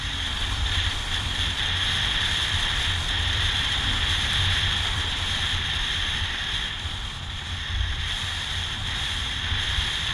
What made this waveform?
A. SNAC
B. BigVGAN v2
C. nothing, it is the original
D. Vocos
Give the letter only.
B